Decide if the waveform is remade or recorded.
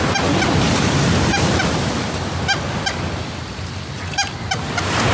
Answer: recorded